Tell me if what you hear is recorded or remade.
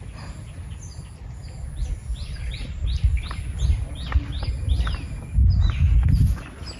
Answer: recorded